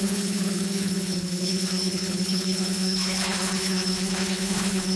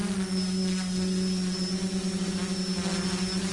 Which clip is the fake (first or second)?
first